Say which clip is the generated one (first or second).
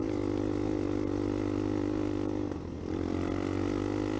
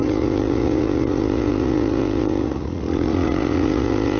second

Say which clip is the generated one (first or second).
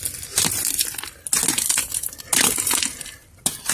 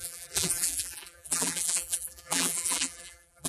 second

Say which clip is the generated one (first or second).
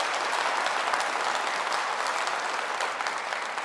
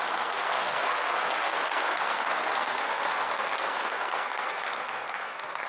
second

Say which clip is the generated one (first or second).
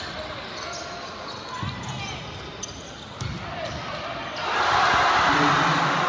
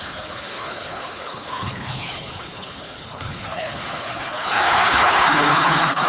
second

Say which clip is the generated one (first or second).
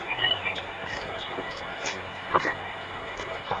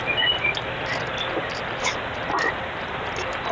first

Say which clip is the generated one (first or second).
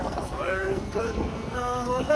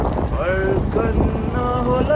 first